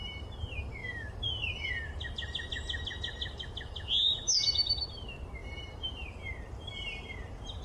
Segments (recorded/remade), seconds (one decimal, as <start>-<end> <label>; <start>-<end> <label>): 0.0-0.8 recorded; 0.8-1.7 remade; 1.7-5.4 recorded; 5.4-7.6 remade